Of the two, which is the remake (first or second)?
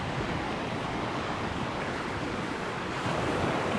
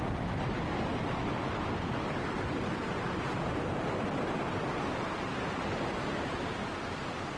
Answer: first